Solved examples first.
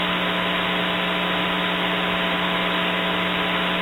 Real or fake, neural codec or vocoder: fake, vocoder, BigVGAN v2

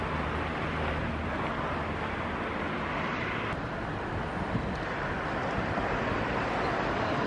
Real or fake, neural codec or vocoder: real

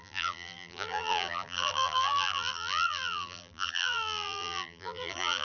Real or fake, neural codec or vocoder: fake, vocoder, BigVGAN v2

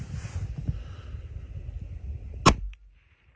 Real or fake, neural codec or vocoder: real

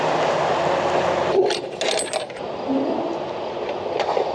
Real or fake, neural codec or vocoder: real